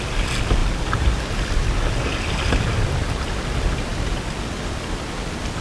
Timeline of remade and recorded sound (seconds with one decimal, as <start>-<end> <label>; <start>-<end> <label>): 0.0-5.6 recorded